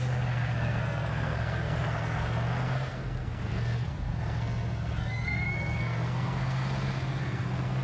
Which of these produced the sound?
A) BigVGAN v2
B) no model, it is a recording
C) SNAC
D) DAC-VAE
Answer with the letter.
C